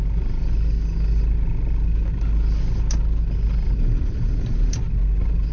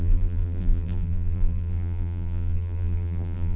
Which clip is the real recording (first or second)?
first